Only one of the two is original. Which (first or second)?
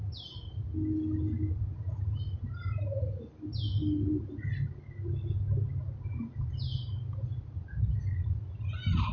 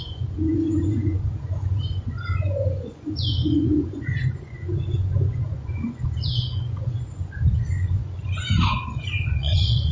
first